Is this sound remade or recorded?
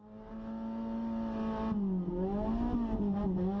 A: recorded